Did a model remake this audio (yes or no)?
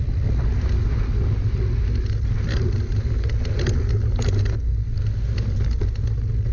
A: no